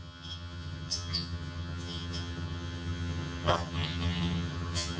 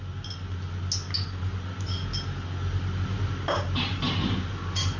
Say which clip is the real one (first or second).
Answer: second